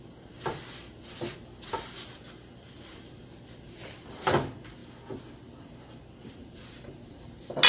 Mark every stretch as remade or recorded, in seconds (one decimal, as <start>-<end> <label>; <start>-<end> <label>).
0.0-7.7 recorded